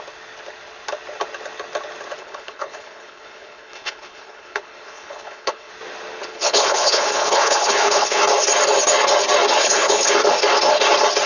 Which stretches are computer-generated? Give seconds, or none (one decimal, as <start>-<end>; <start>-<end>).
2.2-5.7; 6.3-8.2; 9.6-10.1